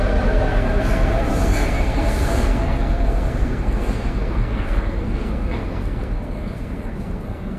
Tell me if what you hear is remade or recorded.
remade